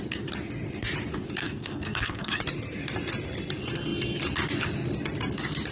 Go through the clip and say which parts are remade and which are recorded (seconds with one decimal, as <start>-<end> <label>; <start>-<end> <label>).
0.0-1.4 recorded; 1.4-2.4 remade; 2.4-5.7 recorded